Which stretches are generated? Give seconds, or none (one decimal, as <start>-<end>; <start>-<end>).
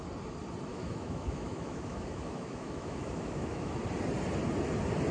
0.7-3.8